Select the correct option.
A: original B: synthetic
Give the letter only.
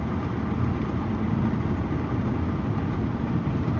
A